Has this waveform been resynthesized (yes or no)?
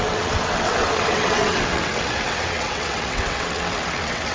yes